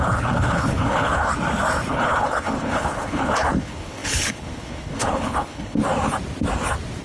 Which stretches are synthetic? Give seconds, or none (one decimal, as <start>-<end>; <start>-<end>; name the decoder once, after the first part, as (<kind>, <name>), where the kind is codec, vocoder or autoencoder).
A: 0.0-1.3 (codec, HILCodec); 1.9-5.8